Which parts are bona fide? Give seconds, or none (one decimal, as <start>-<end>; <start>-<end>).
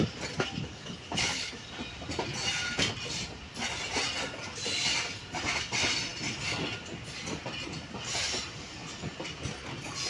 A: 0.0-0.6; 1.5-10.1